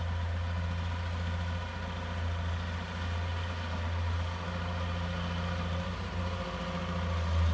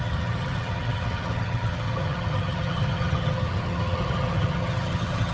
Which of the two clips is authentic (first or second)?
first